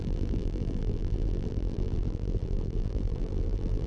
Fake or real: fake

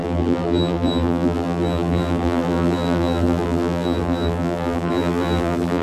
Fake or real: fake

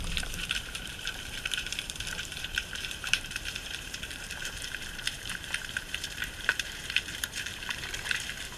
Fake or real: fake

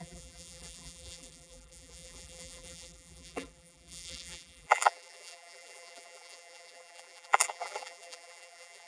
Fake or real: fake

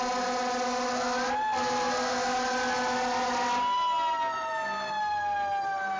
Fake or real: real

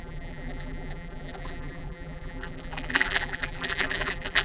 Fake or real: fake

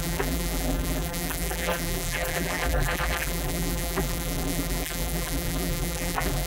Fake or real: fake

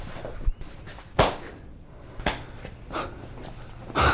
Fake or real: real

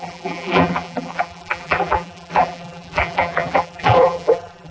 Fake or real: fake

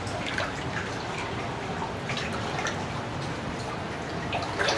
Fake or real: real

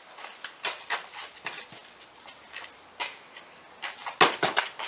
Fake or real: real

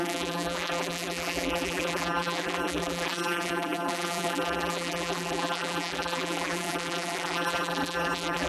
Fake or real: fake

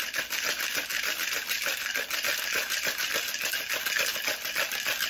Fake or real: real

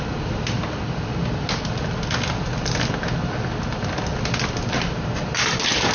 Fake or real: real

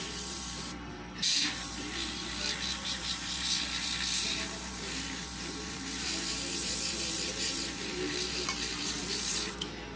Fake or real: fake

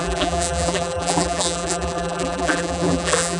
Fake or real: fake